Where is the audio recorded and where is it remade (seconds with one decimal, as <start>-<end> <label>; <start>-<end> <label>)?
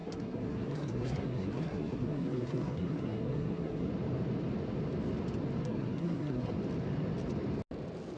0.0-3.9 remade; 3.9-5.6 recorded; 5.6-6.5 remade; 6.5-8.2 recorded